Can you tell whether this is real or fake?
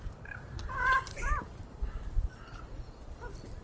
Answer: fake